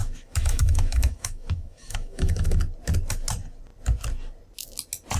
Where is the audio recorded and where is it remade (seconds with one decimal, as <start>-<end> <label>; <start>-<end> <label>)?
0.0-2.6 remade; 2.6-5.2 recorded